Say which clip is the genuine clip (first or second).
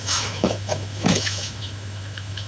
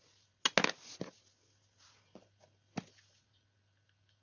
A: second